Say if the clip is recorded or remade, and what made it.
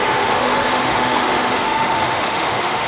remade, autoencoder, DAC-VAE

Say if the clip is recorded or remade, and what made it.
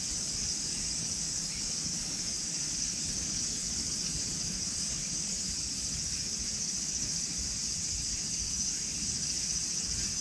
remade, codec, DAC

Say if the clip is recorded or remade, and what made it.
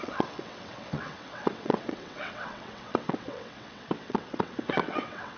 remade, vocoder, WaveNeXt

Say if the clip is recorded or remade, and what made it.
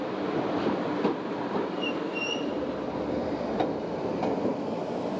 recorded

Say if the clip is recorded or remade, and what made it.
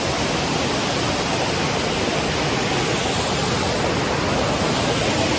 recorded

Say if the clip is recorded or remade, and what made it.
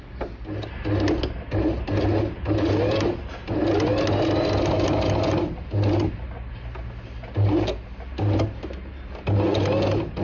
recorded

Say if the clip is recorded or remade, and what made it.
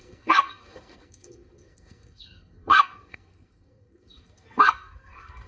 remade, codec, SNAC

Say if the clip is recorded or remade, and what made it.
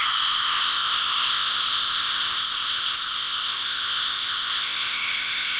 remade, codec, ZipCodec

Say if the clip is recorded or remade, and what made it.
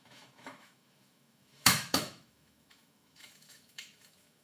remade, autoencoder, DAC-VAE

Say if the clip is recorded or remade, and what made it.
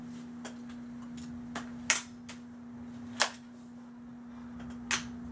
recorded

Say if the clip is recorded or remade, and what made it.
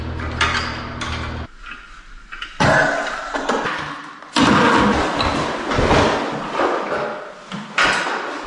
recorded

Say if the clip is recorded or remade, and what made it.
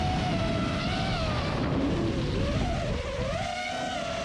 recorded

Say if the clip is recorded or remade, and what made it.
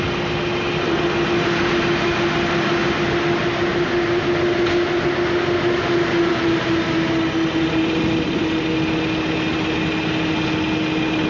recorded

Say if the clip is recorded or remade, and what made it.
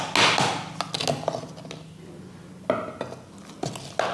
recorded